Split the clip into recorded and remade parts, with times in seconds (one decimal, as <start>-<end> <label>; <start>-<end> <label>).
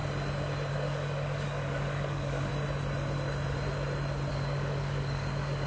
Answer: 0.0-0.7 recorded; 0.7-2.5 remade; 2.5-4.3 recorded; 4.3-5.7 remade